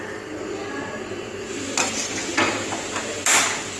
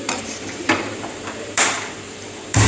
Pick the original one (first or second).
first